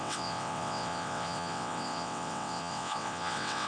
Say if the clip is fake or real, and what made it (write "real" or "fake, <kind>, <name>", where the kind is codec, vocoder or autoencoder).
fake, vocoder, WaveNeXt